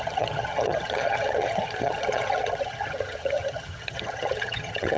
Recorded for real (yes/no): no